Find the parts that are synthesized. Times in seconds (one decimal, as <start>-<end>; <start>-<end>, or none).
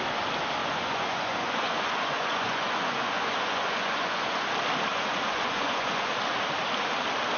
0.6-4.5; 4.9-6.1